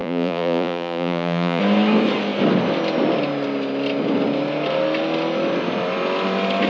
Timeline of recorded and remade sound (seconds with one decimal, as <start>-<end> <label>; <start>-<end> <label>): 0.0-1.6 remade; 1.6-6.7 recorded